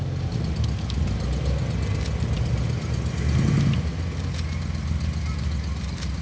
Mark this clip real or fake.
real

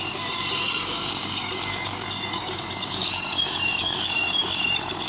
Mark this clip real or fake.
fake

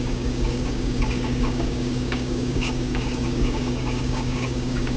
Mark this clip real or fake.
fake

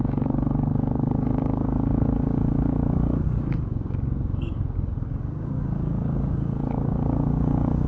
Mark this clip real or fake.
fake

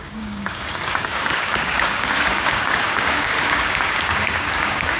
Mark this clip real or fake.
fake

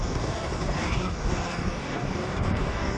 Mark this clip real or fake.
fake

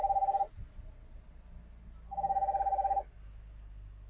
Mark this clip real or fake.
real